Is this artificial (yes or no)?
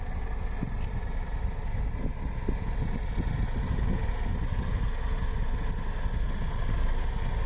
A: no